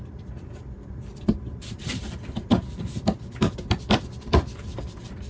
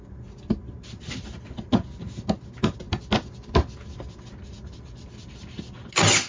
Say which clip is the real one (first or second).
second